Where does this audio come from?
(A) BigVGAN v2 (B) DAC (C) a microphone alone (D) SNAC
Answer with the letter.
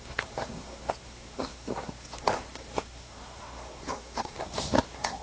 D